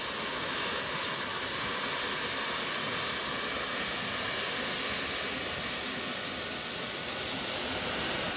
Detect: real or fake real